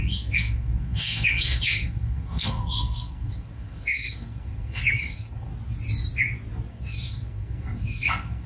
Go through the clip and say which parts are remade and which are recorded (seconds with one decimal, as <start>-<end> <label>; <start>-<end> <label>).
0.0-5.5 remade; 5.5-6.7 recorded; 6.7-8.5 remade